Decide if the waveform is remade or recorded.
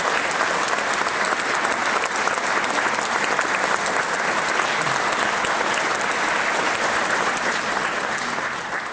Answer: recorded